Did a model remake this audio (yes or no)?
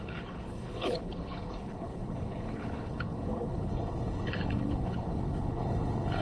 yes